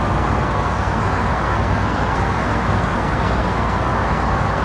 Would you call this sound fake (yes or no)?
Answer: yes